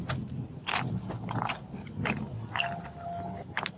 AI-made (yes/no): no